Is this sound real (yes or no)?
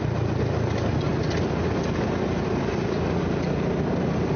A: yes